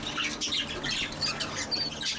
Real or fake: real